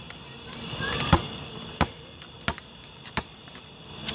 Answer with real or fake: fake